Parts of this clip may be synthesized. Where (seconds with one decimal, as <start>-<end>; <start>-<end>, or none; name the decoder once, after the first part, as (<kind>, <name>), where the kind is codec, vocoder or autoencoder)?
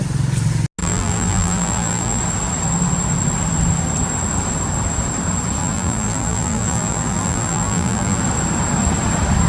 0.8-2.2 (vocoder, BigVGAN v2); 5.6-8.2